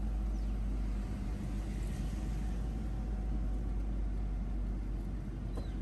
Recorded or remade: recorded